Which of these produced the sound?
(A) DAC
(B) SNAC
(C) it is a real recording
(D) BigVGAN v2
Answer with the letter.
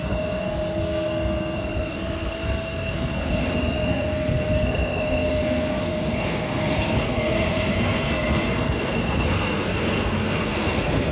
B